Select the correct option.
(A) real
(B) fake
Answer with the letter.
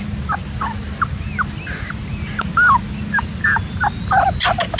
A